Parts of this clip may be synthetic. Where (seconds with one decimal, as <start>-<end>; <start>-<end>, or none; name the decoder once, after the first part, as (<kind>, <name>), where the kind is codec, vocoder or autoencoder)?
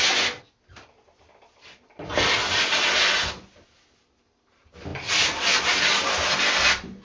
none